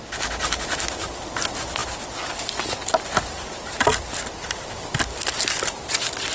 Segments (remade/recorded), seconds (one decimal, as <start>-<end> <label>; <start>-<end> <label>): 0.0-6.3 recorded